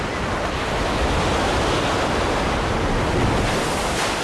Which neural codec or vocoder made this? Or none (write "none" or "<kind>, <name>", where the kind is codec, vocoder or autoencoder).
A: none